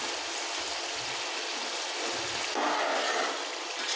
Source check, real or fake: real